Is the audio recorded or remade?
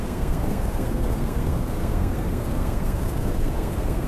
remade